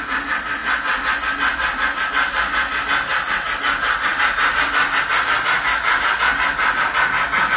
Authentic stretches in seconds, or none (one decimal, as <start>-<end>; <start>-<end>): 0.0-7.6